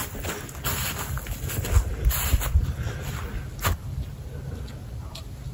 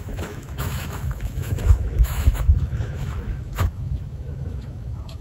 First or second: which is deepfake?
second